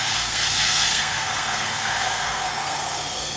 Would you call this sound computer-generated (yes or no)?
yes